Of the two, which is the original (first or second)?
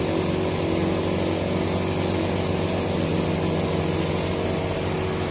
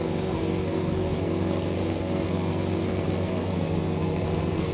first